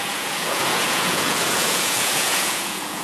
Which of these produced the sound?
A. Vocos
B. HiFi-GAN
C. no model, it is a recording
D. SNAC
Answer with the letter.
A